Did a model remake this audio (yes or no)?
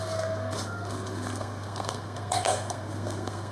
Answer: yes